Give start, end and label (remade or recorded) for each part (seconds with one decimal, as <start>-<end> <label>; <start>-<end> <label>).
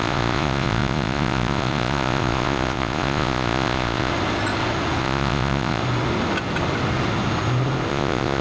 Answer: 0.0-4.1 remade; 4.1-5.0 recorded; 5.0-5.8 remade; 5.8-7.9 recorded; 7.9-8.4 remade